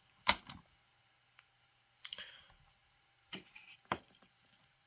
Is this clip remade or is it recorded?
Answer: remade